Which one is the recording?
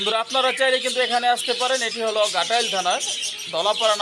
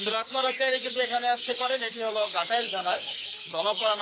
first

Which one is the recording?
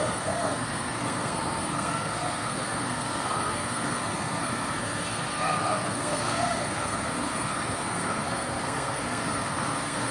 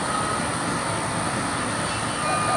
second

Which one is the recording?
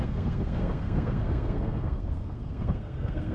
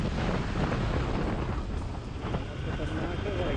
second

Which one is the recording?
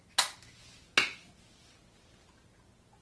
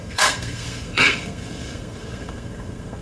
first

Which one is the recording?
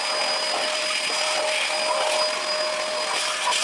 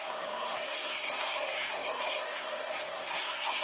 first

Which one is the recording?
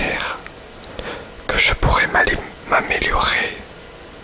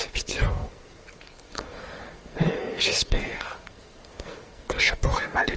first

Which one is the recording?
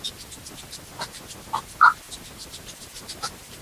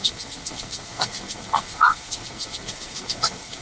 first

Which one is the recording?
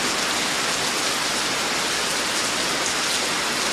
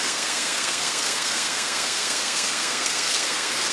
first